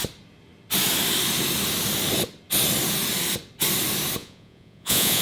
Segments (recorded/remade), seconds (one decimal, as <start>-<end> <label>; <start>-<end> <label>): 0.0-4.2 recorded; 4.2-5.2 remade